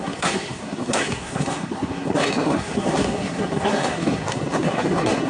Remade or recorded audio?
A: remade